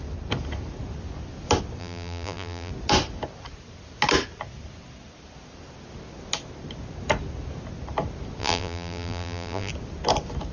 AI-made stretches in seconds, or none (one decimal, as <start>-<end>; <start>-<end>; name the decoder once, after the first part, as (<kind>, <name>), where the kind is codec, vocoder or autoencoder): 1.8-2.7 (vocoder, BigVGAN v2); 8.4-9.7